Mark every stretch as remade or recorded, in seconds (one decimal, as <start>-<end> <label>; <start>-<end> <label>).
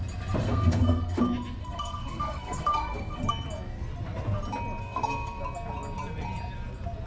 0.0-0.4 recorded; 0.4-1.2 remade; 1.2-1.6 recorded; 1.6-3.3 remade; 3.3-4.8 recorded; 4.8-5.4 remade; 5.4-7.1 recorded